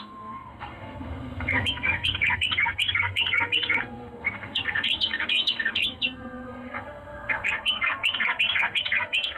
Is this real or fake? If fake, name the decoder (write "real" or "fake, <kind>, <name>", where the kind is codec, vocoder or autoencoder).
fake, codec, SNAC